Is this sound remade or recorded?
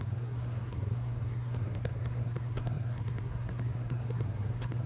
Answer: remade